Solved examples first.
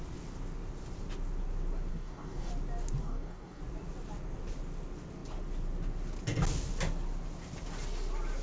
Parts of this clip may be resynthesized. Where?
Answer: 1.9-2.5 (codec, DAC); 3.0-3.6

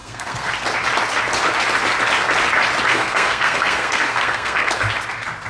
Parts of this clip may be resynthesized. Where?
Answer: 0.0-0.5 (codec, SNAC); 2.9-4.7

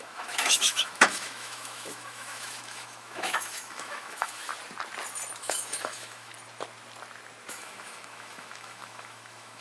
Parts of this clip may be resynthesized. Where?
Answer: 0.0-4.5 (autoencoder, DAC-VAE); 5.4-6.3; 7.5-9.6

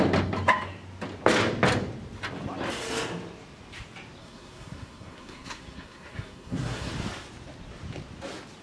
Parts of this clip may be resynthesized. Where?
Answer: 4.2-6.9 (codec, SNAC)

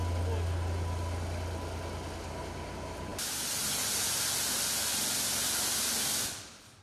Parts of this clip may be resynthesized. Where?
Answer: 3.1-6.8 (vocoder, BigVGAN v2)